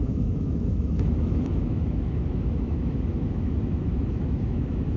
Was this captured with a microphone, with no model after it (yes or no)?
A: no